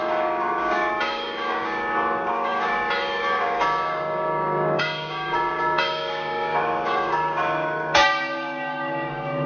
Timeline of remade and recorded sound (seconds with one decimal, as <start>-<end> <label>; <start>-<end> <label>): 0.0-9.5 remade